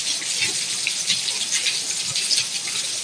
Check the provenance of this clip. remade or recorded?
recorded